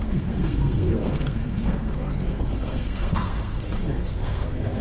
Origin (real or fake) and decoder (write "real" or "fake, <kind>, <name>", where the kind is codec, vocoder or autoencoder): fake, codec, SNAC